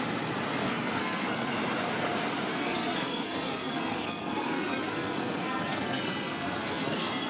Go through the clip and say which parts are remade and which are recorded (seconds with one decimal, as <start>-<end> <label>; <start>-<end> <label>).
0.0-0.6 recorded; 0.6-1.5 remade; 1.5-2.5 recorded; 2.5-7.3 remade